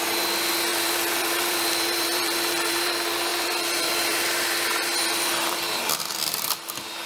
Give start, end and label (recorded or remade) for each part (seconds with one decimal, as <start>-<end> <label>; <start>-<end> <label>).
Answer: 0.0-0.7 recorded; 0.7-2.9 remade; 2.9-3.3 recorded; 3.3-6.2 remade; 6.2-7.1 recorded